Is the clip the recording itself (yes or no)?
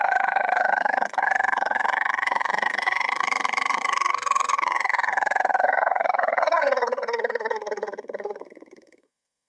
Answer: no